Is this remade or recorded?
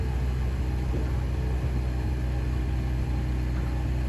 recorded